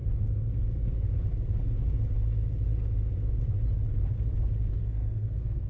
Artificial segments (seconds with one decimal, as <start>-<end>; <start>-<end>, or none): 4.8-5.7